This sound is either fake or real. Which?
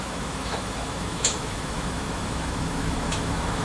fake